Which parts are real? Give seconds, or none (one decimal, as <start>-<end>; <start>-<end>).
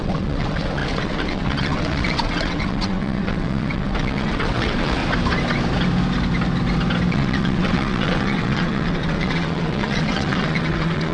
5.0-7.1